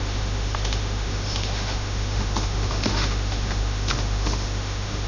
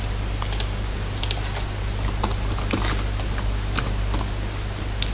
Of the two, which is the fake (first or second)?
first